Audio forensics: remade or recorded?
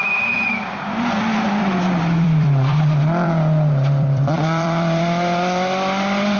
remade